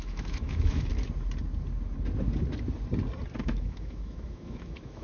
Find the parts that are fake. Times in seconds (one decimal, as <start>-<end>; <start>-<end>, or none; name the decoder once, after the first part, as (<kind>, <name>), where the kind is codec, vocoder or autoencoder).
0.0-0.9 (autoencoder, DAC-VAE); 3.4-5.0